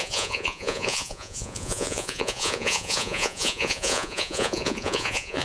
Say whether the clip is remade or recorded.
remade